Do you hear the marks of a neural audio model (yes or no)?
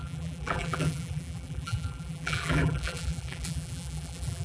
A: yes